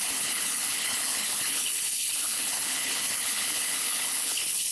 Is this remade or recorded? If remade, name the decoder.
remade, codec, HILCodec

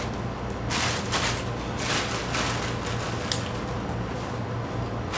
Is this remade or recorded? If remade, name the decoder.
recorded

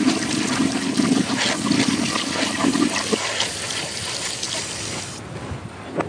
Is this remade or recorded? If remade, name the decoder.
recorded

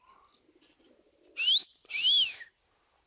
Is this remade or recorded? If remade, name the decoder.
recorded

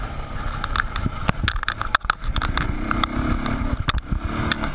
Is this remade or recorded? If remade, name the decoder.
recorded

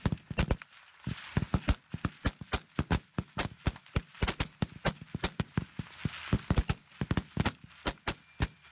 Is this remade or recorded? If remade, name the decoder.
recorded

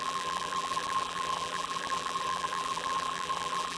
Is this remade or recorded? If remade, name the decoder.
remade, vocoder, BigVGAN v2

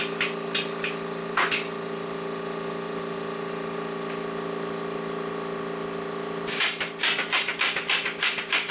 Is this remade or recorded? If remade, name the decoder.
recorded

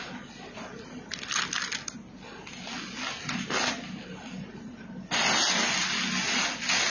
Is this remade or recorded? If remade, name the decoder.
recorded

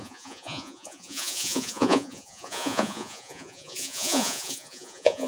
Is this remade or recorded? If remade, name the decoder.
remade, vocoder, Vocos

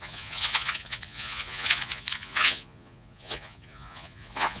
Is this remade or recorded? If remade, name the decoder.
remade, vocoder, Vocos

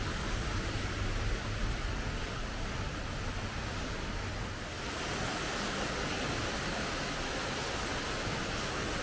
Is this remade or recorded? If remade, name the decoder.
recorded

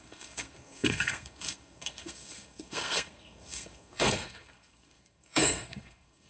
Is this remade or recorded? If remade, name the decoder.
remade, codec, SNAC